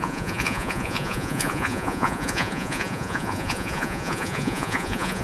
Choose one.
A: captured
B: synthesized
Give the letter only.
B